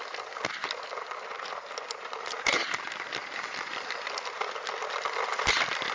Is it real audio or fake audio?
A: real